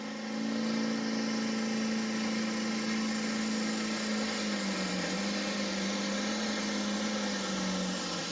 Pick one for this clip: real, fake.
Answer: real